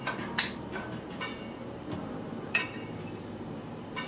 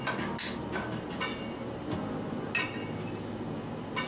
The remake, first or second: first